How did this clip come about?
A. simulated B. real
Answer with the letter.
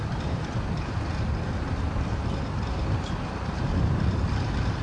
B